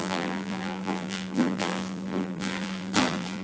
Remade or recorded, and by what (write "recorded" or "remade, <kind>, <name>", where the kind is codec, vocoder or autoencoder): remade, vocoder, BigVGAN v2